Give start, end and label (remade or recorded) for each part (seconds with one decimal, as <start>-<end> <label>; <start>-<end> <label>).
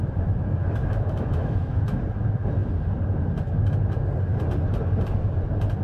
0.0-0.8 recorded; 0.8-2.0 remade; 2.0-5.8 recorded